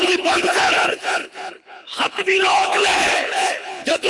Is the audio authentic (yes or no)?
no